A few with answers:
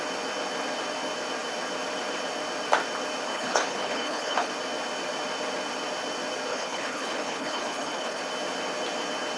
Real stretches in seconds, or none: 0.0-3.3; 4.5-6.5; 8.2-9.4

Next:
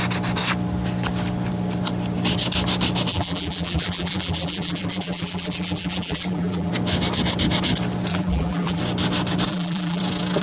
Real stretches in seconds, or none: 0.0-3.1; 6.7-8.1; 8.8-9.5; 10.0-10.4

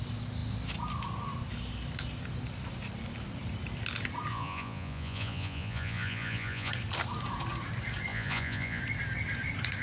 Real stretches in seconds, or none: 0.0-4.3; 6.7-8.1; 8.8-9.8

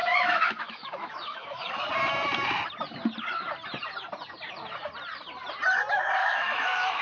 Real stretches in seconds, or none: 1.9-6.2

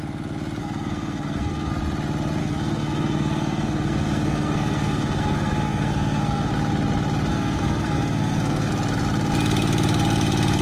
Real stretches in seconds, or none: 0.0-0.6; 1.7-2.4; 6.5-7.3; 8.7-10.6